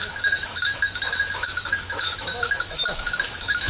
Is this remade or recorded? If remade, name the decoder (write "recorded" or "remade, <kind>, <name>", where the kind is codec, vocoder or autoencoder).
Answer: remade, autoencoder, DAC-VAE